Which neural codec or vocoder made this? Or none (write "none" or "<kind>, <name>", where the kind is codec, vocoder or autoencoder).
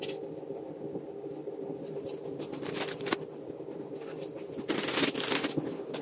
none